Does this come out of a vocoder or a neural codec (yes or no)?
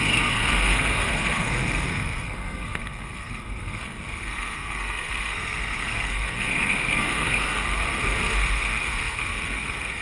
yes